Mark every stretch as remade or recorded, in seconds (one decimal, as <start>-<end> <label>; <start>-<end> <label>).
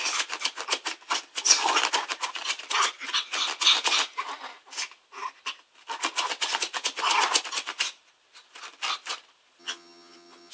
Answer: 0.0-9.6 recorded; 9.6-10.5 remade